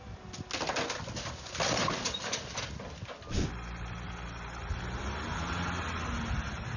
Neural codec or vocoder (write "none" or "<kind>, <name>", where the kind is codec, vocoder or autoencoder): none